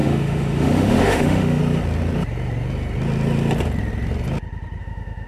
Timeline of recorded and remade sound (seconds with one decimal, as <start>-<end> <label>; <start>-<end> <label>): 0.0-1.6 remade; 1.6-4.8 recorded; 4.8-5.3 remade